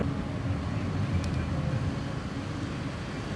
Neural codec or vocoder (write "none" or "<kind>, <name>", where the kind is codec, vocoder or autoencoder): none